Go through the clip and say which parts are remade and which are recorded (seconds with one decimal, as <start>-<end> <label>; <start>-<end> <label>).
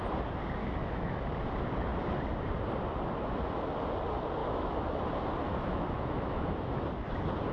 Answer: 0.0-0.6 recorded; 0.6-1.2 remade; 1.2-4.4 recorded; 4.4-5.0 remade; 5.0-5.5 recorded; 5.5-6.8 remade; 6.8-7.5 recorded